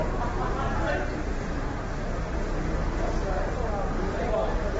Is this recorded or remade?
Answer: recorded